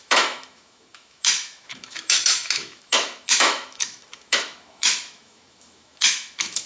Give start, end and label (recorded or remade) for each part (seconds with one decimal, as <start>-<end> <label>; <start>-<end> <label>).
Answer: 0.0-6.7 remade